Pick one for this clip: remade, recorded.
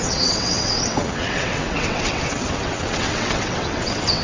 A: remade